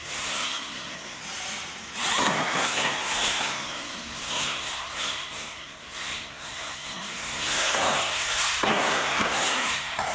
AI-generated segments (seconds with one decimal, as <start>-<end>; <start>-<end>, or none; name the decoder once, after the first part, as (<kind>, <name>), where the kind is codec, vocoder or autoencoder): 0.0-1.2 (codec, SNAC); 2.2-10.1